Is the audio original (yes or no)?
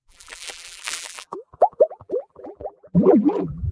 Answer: no